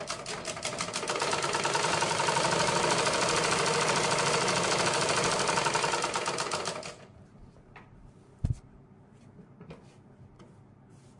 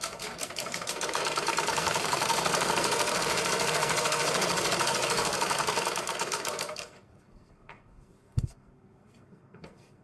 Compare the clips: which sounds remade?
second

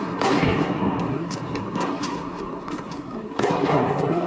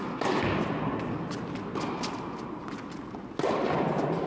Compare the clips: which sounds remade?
first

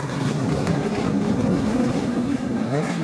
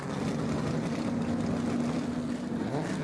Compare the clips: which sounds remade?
first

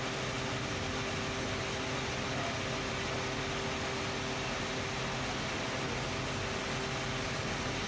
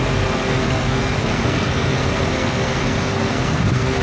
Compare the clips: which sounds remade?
second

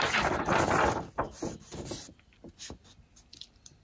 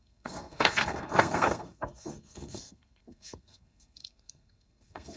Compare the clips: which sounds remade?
second